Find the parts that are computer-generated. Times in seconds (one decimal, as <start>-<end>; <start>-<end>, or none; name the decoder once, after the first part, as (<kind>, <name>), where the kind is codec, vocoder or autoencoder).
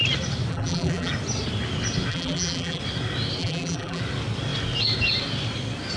0.5-1.1 (vocoder, BigVGAN v2); 2.1-2.8; 3.4-4.0